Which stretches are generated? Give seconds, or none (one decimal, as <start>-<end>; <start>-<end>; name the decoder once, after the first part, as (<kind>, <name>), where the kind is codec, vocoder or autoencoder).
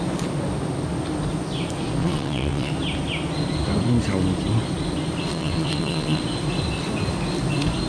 2.0-2.7 (vocoder, WaveNeXt); 5.3-6.2